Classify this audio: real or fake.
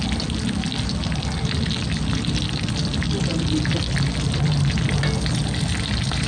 real